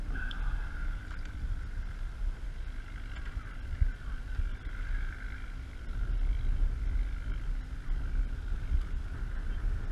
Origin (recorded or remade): recorded